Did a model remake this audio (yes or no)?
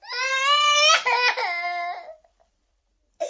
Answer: no